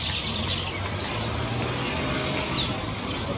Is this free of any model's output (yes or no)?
yes